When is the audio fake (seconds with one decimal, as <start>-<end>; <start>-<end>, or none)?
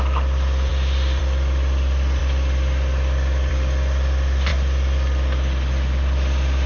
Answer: none